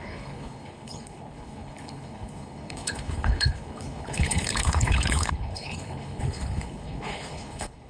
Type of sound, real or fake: fake